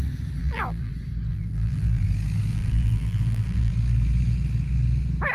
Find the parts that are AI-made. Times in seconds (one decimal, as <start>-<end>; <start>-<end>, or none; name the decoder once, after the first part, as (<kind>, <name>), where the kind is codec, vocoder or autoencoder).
0.4-0.9 (vocoder, BigVGAN v2); 1.3-2.0; 2.5-3.7

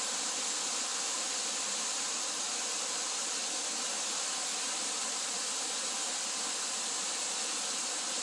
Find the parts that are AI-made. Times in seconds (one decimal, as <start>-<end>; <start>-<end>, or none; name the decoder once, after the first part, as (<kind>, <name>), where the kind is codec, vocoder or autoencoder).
0.9-2.1 (vocoder, BigVGAN v2); 4.5-7.2

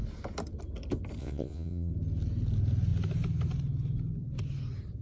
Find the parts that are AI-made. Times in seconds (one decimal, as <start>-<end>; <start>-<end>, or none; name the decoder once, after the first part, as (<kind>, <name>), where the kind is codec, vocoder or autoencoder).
1.2-1.9 (vocoder, Vocos)

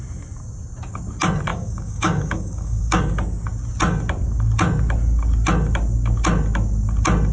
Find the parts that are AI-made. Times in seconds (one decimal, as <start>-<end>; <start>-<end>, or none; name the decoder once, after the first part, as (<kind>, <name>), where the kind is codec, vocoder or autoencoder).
1.5-3.0 (codec, DAC)

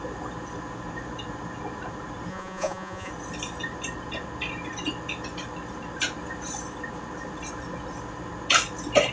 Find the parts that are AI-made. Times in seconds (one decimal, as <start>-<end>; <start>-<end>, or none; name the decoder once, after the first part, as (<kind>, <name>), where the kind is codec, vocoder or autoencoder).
2.3-3.1 (vocoder, Vocos)

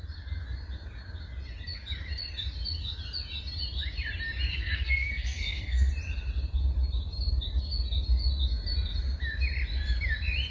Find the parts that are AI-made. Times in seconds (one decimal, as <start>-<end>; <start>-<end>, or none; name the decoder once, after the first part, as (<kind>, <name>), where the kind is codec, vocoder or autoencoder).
4.5-5.9 (codec, SNAC)